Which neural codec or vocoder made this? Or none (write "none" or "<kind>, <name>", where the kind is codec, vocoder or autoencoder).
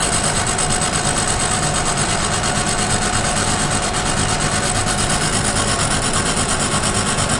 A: none